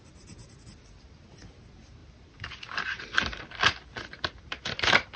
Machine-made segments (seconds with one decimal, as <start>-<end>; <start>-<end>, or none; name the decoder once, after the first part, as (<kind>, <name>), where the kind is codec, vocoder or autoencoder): 2.0-5.2 (vocoder, BigVGAN v2)